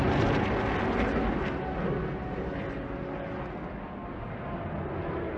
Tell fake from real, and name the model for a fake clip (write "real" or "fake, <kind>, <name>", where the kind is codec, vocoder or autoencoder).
real